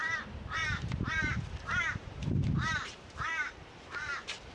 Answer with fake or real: fake